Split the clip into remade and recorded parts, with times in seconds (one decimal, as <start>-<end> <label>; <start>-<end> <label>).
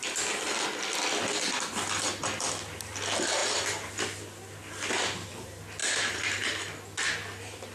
0.0-5.8 recorded; 5.8-6.6 remade; 6.6-7.7 recorded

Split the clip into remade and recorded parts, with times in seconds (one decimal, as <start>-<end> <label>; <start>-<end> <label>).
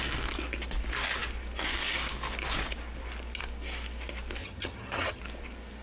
0.0-4.4 recorded; 4.4-5.2 remade; 5.2-5.8 recorded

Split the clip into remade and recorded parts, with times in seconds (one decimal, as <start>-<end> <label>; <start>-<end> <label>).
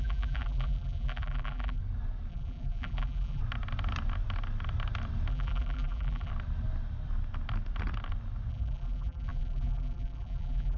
0.0-1.8 remade; 1.8-2.3 recorded; 2.3-3.4 remade; 3.4-5.3 recorded; 5.3-6.3 remade; 6.3-8.5 recorded; 8.5-10.8 remade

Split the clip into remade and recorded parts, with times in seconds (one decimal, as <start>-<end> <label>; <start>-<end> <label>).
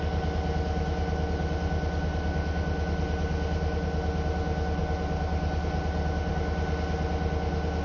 0.0-7.8 recorded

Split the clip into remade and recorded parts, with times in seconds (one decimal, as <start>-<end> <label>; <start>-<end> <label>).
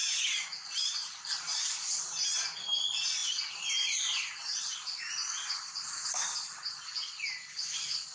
0.0-1.9 remade; 1.9-3.2 recorded; 3.2-4.6 remade; 4.6-8.1 recorded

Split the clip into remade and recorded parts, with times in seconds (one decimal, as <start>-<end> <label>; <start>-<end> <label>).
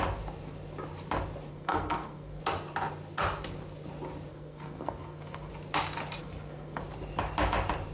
0.0-1.5 recorded; 1.5-2.4 remade; 2.4-4.3 recorded; 4.3-5.5 remade; 5.5-6.2 recorded; 6.2-6.8 remade; 6.8-7.9 recorded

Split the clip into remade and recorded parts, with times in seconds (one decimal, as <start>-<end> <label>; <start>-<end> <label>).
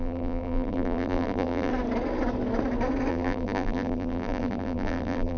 0.0-1.7 remade; 1.7-3.1 recorded; 3.1-5.4 remade